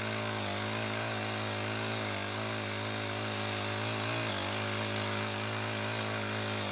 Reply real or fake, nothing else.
real